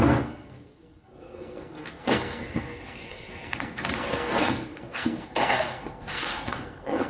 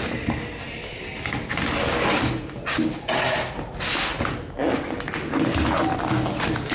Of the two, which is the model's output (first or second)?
first